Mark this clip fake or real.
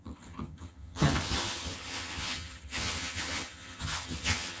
fake